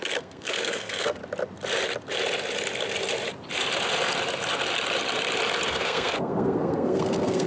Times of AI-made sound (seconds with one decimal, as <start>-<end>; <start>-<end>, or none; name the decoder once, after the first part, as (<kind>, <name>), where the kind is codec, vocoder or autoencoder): 0.0-1.2 (codec, SNAC); 5.7-7.5